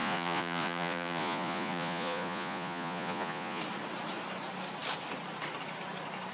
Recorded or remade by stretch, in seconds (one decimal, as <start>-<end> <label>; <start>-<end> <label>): 0.0-3.6 remade; 3.6-6.3 recorded